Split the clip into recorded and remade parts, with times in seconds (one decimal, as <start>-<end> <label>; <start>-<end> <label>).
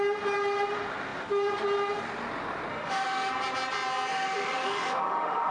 0.0-2.7 recorded; 2.7-3.3 remade; 3.3-4.1 recorded; 4.1-5.5 remade